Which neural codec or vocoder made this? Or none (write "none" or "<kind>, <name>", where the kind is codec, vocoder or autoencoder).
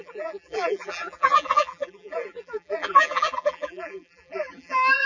vocoder, BigVGAN v2